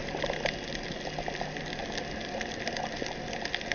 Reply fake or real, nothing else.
real